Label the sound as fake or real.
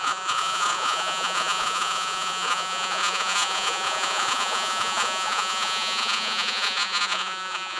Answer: fake